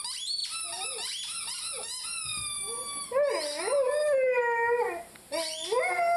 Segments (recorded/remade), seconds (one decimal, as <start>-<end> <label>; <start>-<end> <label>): 0.0-6.2 recorded